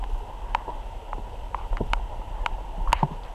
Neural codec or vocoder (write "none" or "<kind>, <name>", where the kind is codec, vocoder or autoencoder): none